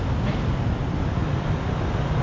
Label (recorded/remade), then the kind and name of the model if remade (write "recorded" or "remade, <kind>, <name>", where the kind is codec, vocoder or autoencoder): recorded